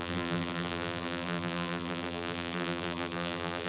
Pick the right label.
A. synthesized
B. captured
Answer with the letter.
A